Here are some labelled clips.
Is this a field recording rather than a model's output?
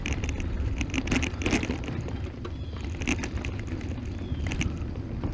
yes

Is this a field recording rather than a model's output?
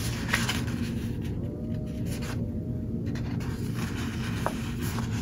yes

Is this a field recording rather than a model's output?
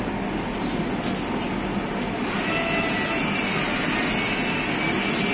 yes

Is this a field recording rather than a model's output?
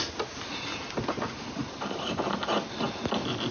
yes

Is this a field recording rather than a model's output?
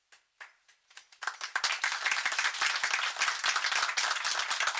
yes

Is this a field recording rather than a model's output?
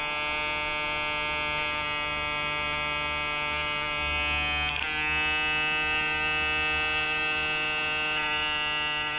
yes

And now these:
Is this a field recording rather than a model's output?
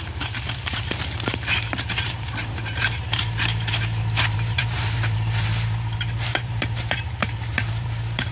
no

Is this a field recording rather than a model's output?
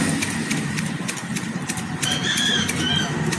yes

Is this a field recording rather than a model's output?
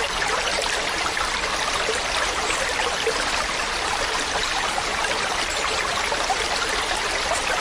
no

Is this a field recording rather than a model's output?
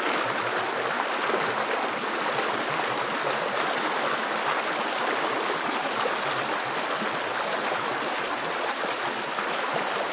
yes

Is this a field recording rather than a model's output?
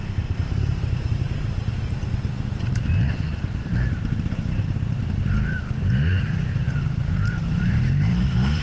no